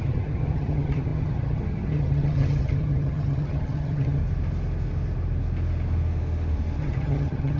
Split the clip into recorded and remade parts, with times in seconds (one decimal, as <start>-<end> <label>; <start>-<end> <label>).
0.0-4.2 remade; 4.2-6.8 recorded; 6.8-7.6 remade